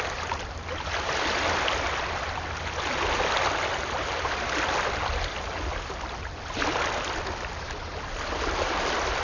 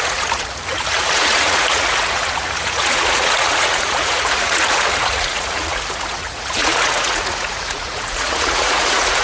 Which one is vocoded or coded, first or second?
second